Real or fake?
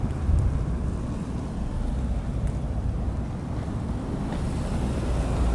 real